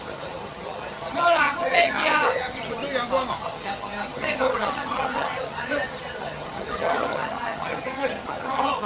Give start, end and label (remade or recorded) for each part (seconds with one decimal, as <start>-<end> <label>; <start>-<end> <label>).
0.0-2.8 remade; 2.8-3.3 recorded; 3.3-8.9 remade